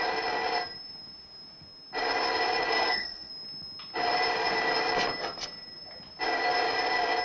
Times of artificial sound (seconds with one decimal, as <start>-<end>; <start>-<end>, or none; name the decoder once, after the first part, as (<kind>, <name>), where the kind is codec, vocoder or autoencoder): 2.7-3.3 (codec, SNAC)